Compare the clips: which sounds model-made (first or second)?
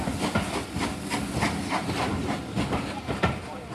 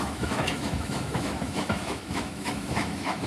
second